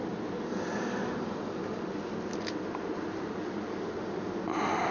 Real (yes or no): yes